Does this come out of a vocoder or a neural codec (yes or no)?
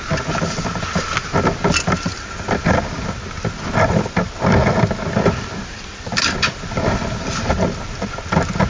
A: no